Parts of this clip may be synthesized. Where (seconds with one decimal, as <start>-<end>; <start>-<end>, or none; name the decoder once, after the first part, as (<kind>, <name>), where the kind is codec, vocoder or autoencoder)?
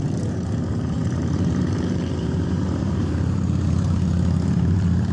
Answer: 0.0-5.1 (vocoder, BigVGAN v2)